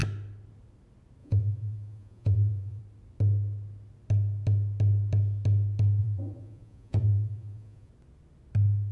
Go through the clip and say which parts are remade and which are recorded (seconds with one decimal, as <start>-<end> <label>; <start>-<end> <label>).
0.0-1.2 recorded; 1.2-2.8 remade; 2.8-6.0 recorded; 6.0-7.9 remade; 7.9-8.9 recorded